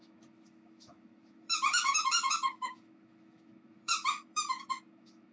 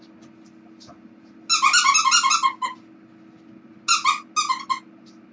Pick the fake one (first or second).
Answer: first